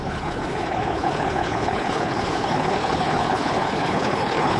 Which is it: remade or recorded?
remade